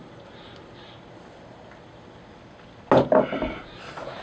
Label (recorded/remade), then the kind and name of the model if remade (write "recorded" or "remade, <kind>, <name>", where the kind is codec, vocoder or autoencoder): recorded